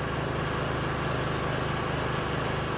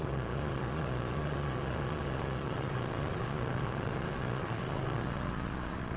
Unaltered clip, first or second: first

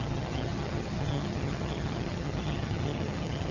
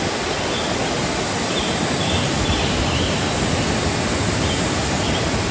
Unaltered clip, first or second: second